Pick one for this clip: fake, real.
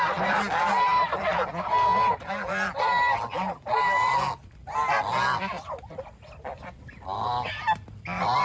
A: real